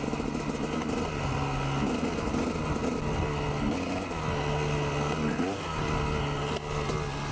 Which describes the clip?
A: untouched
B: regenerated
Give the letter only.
A